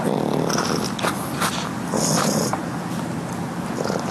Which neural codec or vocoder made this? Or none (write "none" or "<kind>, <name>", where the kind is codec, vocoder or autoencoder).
none